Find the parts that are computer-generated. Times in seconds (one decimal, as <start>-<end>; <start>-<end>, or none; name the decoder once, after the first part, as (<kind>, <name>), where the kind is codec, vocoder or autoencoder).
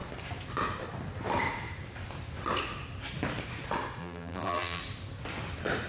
4.0-4.8 (vocoder, BigVGAN v2)